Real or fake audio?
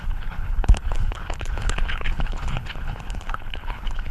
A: fake